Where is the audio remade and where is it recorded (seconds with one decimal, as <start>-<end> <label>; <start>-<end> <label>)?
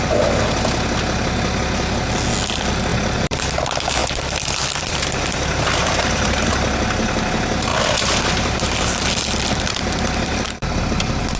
0.0-2.9 recorded; 2.9-3.5 remade; 3.5-4.0 recorded; 4.0-6.5 remade; 6.5-7.7 recorded; 7.7-10.8 remade; 10.8-11.4 recorded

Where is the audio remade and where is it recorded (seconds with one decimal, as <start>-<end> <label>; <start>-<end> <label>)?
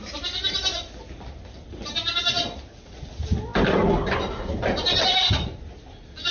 0.0-6.3 recorded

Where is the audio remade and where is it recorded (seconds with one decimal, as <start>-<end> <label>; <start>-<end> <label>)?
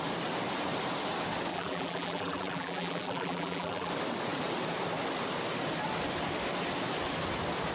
0.0-1.5 recorded; 1.5-3.9 remade; 3.9-7.7 recorded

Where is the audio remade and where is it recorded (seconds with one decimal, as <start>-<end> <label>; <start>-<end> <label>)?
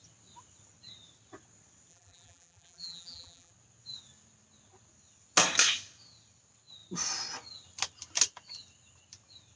0.0-1.9 recorded; 1.9-3.5 remade; 3.5-9.6 recorded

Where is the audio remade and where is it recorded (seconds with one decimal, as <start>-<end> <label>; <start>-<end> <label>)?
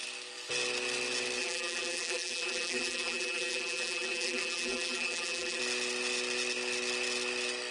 0.0-1.4 recorded; 1.4-5.6 remade; 5.6-7.7 recorded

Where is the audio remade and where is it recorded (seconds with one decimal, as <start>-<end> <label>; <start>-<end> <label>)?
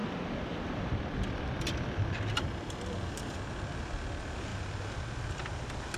0.0-3.5 remade; 3.5-4.5 recorded; 4.5-5.4 remade; 5.4-6.0 recorded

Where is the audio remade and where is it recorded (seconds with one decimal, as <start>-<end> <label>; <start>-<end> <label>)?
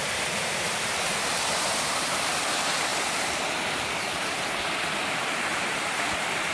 0.0-2.3 remade; 2.3-5.5 recorded; 5.5-6.1 remade; 6.1-6.5 recorded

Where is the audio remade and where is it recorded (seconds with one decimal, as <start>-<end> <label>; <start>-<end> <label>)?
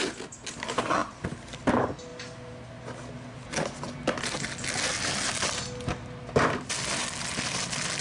0.0-1.0 recorded; 1.0-1.7 remade; 1.7-8.0 recorded